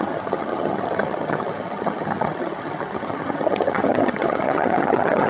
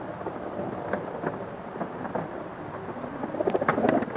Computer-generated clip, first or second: first